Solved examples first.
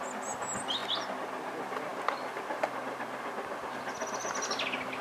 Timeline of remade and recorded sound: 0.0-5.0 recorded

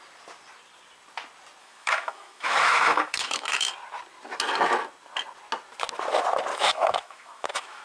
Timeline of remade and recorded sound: 0.0-1.6 recorded; 1.6-3.7 remade; 3.7-6.5 recorded; 6.5-7.8 remade

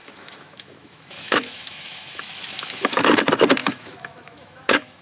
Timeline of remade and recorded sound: 0.0-3.0 remade; 3.0-3.6 recorded; 3.6-5.0 remade

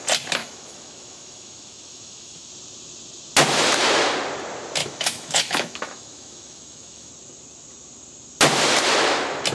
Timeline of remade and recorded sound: 0.0-0.4 recorded; 0.4-2.5 remade; 2.5-4.8 recorded; 4.8-7.1 remade; 7.1-9.5 recorded

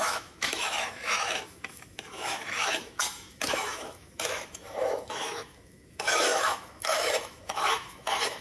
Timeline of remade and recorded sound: 0.0-8.4 remade